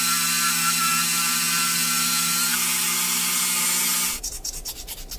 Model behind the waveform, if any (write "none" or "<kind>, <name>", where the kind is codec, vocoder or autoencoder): none